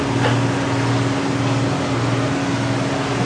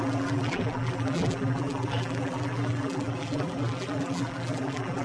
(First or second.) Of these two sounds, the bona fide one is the first